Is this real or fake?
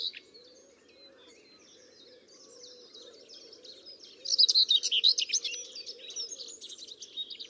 real